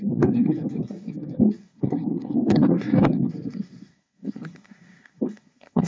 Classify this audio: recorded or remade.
remade